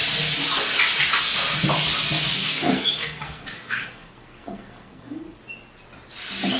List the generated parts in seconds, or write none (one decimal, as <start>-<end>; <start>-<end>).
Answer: 2.4-5.4